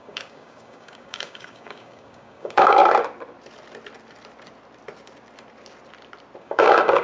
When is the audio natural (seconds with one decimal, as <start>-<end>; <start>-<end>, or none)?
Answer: 2.8-6.4